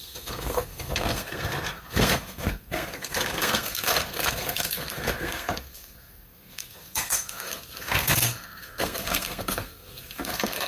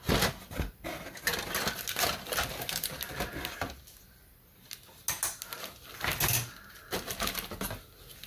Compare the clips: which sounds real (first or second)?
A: second